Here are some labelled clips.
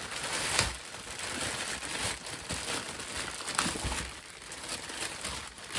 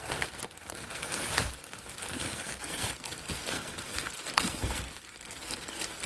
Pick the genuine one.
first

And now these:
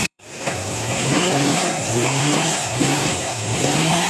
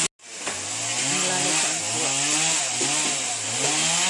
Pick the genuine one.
second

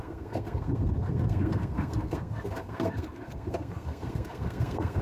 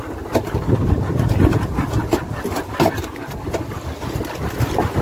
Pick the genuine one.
second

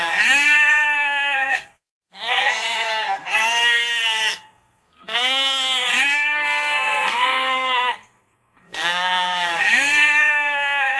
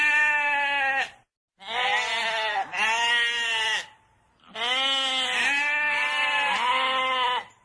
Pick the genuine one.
second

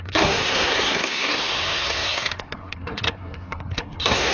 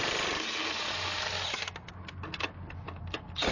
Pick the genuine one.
second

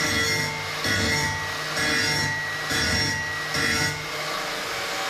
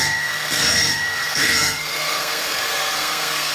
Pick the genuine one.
first